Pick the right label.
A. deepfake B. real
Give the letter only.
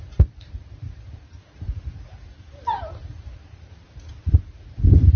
A